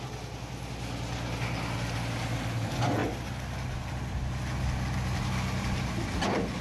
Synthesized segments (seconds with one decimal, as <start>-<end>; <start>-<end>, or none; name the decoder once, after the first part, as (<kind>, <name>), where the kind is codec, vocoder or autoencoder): none